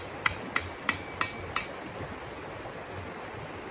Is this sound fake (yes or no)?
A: no